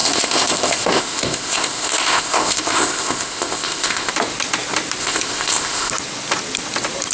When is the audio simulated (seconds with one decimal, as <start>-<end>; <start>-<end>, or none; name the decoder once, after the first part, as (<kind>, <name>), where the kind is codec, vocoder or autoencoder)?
0.0-4.1 (codec, ZipCodec); 5.0-5.9